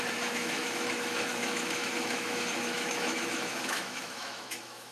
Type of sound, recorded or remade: remade